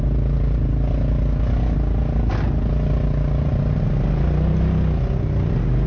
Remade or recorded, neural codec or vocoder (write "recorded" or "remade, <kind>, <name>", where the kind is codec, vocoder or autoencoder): recorded